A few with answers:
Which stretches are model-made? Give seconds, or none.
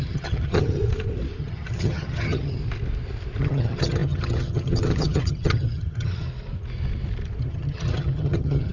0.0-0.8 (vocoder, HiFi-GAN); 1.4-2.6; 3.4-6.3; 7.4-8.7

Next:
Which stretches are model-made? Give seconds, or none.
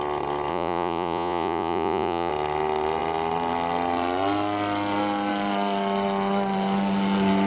0.5-2.3 (vocoder, Vocos)